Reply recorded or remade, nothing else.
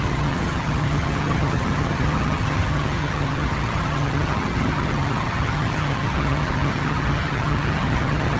remade